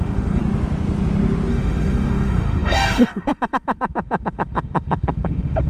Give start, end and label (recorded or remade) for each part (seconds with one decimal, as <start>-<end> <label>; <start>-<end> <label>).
0.0-0.4 remade; 0.4-1.5 recorded; 1.5-5.7 remade